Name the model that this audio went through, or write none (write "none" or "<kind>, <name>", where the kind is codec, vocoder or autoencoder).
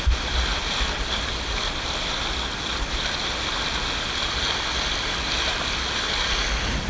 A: none